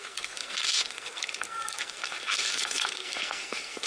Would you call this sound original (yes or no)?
no